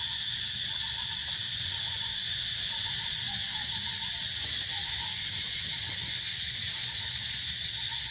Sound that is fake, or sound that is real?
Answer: fake